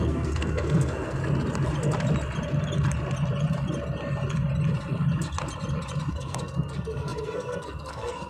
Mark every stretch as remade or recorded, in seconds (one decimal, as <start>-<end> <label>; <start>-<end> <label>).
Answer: 0.0-1.2 remade; 1.2-6.1 recorded; 6.1-8.3 remade